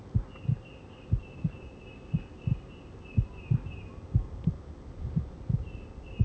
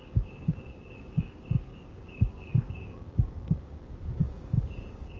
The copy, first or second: second